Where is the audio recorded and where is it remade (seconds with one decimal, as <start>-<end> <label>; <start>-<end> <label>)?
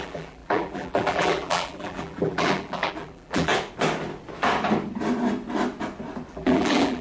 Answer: 0.0-3.5 remade; 3.5-6.3 recorded; 6.3-7.0 remade